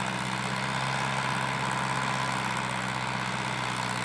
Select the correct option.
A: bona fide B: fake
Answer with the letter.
A